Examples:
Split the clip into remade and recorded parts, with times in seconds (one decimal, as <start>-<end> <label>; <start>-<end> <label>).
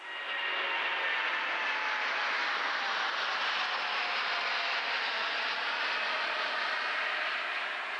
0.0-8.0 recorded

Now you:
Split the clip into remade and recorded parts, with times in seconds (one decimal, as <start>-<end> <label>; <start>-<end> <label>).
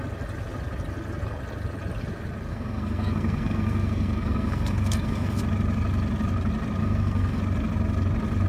0.0-2.5 recorded; 2.5-5.4 remade; 5.4-6.8 recorded; 6.8-7.4 remade; 7.4-8.5 recorded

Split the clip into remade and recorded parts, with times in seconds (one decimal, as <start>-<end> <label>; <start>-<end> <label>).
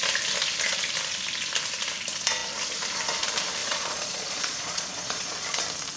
0.0-3.6 recorded; 3.6-5.6 remade; 5.6-6.0 recorded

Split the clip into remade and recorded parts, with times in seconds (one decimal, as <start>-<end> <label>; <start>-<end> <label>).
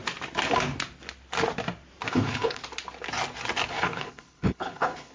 0.0-2.1 recorded; 2.1-2.6 remade; 2.6-3.7 recorded; 3.7-5.1 remade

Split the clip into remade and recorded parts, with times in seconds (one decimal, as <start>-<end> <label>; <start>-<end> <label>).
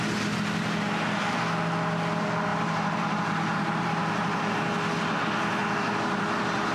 0.0-2.5 recorded; 2.5-4.5 remade; 4.5-6.7 recorded